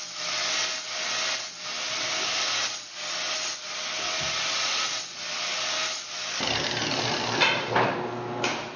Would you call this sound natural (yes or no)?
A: yes